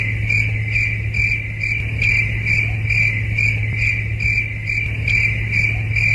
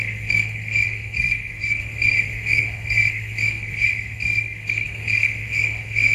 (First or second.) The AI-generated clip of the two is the second